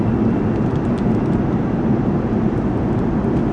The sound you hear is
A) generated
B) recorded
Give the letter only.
B